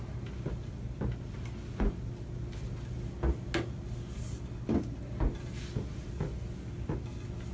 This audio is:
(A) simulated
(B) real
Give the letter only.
B